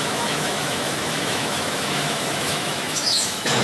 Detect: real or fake fake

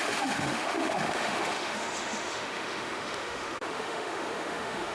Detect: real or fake fake